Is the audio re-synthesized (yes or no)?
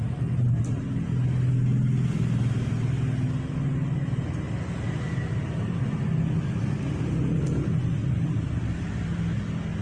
no